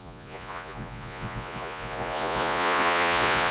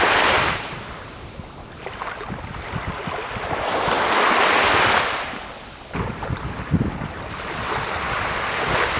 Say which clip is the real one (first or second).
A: second